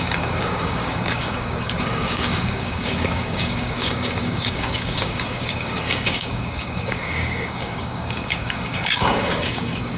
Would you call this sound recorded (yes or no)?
no